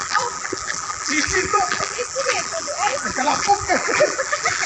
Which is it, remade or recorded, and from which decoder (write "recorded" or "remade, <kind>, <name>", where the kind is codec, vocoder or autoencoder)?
remade, vocoder, BigVGAN v2